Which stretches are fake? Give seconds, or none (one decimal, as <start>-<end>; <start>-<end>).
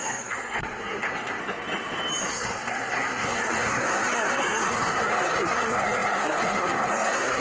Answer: 0.0-1.4; 2.3-7.4